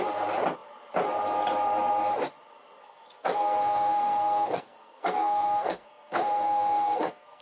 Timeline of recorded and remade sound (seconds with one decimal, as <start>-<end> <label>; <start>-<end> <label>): 0.0-2.8 recorded; 2.8-7.4 remade